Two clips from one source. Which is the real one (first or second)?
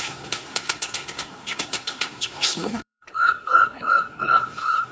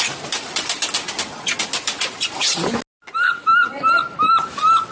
second